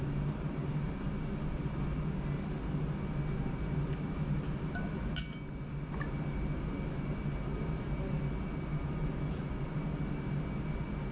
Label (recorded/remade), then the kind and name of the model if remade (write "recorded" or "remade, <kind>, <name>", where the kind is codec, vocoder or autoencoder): recorded